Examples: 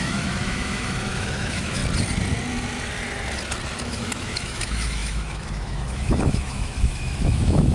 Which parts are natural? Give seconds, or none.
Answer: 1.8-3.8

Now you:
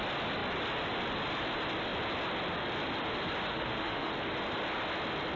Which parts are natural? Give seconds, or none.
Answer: 0.0-3.5; 4.1-5.4